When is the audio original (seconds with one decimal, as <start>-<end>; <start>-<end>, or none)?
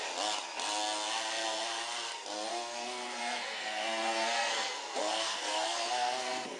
0.0-2.5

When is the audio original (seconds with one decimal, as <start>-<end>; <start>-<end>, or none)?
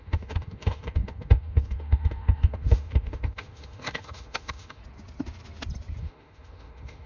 4.8-6.0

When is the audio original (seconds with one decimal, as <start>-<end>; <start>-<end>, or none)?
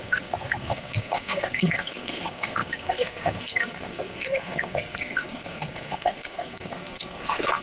none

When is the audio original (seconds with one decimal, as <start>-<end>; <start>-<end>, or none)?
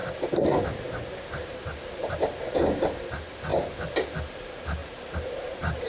0.0-4.8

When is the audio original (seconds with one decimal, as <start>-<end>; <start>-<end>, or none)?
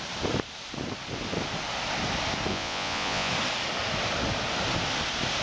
0.0-2.5; 3.3-5.4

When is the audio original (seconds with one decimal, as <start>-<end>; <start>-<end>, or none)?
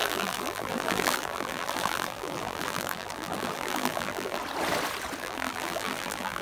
4.4-5.2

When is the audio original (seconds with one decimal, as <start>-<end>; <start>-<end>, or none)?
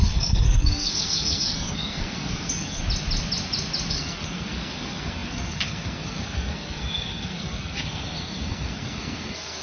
2.8-3.9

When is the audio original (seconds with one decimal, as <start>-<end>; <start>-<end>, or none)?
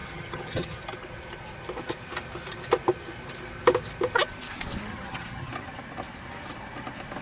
0.8-4.9; 5.5-7.2